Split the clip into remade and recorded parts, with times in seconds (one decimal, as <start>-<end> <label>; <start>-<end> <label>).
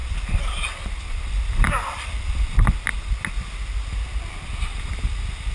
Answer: 0.0-5.5 recorded